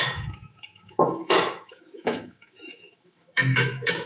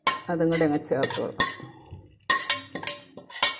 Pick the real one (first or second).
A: second